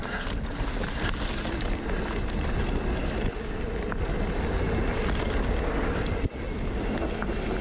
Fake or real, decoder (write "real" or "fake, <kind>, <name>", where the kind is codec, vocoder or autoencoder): real